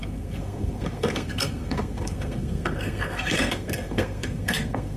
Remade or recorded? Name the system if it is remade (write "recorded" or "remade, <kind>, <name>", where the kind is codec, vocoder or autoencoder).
remade, codec, SNAC